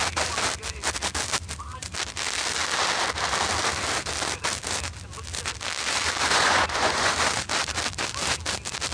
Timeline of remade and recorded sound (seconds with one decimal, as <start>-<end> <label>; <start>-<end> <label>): 0.0-6.3 recorded; 6.3-7.1 remade; 7.1-8.9 recorded